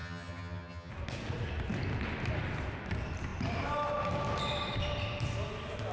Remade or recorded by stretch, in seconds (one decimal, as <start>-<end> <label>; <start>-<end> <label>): 0.0-0.9 remade; 0.9-5.9 recorded